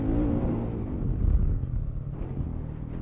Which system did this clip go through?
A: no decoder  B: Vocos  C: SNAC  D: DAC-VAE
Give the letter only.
A